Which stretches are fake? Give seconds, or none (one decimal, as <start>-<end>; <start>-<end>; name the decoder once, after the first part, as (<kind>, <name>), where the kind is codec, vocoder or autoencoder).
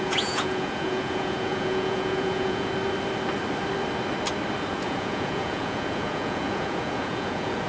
0.0-2.7 (vocoder, Vocos); 4.7-7.7